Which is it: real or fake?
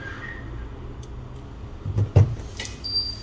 real